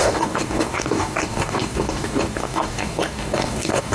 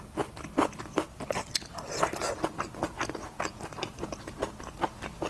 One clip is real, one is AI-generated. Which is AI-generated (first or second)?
first